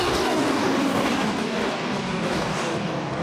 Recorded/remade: remade